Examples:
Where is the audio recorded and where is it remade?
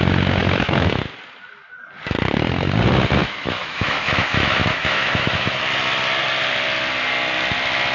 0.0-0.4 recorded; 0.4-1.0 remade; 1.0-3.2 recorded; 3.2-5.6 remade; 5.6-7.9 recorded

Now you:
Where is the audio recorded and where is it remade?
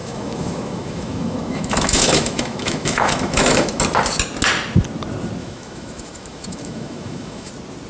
0.0-3.8 remade; 3.8-5.4 recorded; 5.4-7.5 remade; 7.5-7.9 recorded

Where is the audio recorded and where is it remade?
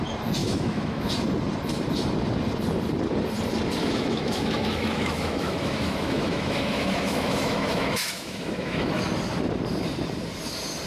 0.0-0.4 recorded; 0.4-1.1 remade; 1.1-3.8 recorded; 3.8-8.9 remade; 8.9-10.9 recorded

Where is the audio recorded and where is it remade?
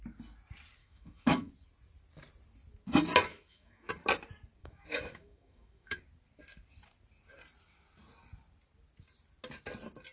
0.0-0.8 recorded; 0.8-1.5 remade; 1.5-3.3 recorded; 3.3-3.9 remade; 3.9-4.6 recorded; 4.6-6.0 remade; 6.0-10.1 recorded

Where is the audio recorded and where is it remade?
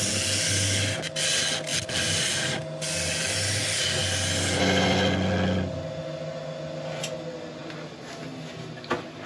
0.0-9.3 recorded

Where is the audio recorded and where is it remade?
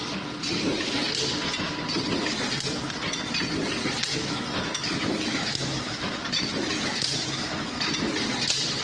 0.0-4.1 recorded; 4.1-7.9 remade; 7.9-8.8 recorded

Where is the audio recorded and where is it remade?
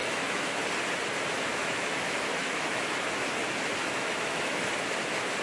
0.0-0.6 remade; 0.6-1.5 recorded; 1.5-3.4 remade; 3.4-3.8 recorded; 3.8-4.7 remade; 4.7-5.4 recorded